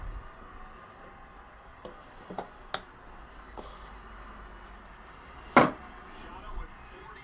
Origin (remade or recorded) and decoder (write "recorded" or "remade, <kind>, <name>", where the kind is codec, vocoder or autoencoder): recorded